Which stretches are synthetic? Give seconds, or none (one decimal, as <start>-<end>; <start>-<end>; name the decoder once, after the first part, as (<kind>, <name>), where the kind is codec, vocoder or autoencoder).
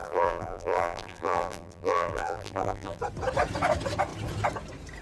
0.0-3.0 (vocoder, BigVGAN v2)